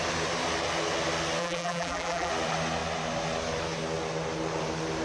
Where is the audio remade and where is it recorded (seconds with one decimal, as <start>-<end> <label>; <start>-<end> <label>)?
0.0-1.4 recorded; 1.4-2.3 remade; 2.3-5.0 recorded